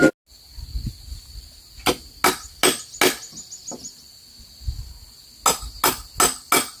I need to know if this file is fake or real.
real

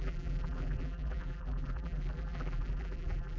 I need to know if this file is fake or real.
fake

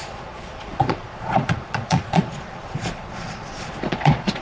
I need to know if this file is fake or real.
fake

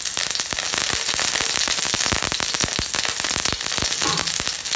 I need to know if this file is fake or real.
real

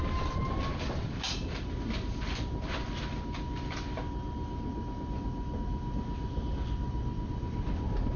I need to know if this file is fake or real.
real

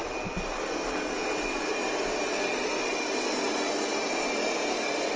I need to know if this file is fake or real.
real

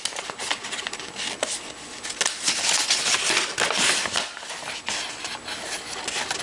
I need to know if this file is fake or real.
real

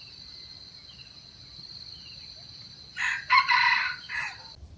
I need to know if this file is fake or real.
real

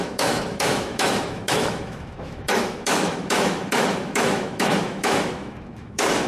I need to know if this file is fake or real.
fake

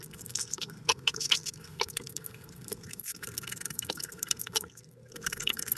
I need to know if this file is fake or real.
fake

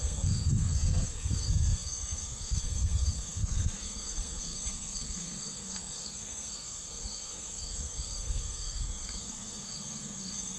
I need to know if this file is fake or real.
fake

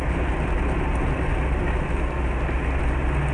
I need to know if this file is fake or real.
real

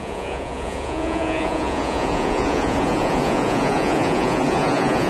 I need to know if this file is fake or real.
fake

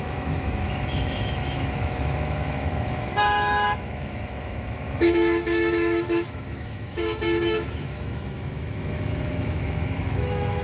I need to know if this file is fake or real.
fake